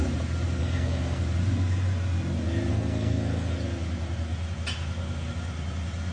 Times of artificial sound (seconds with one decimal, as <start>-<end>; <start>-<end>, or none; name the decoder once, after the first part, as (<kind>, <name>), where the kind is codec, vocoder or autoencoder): 0.6-1.2 (codec, SNAC); 2.7-3.5